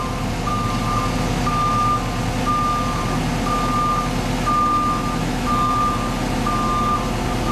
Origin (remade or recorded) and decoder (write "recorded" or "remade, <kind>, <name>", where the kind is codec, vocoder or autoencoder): recorded